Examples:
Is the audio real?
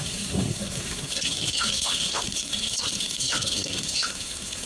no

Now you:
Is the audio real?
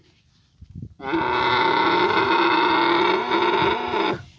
yes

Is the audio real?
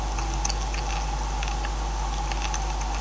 yes